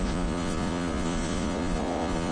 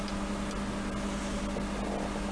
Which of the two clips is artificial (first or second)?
first